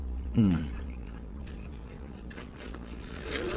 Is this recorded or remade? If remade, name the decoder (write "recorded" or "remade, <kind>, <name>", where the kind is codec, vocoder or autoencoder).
remade, vocoder, Vocos